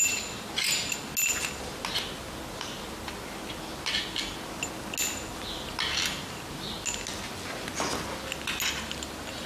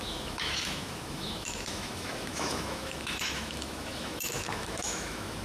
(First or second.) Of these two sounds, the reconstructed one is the second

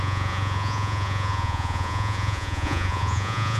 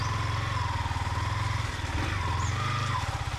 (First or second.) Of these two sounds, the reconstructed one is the first